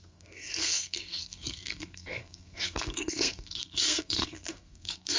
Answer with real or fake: fake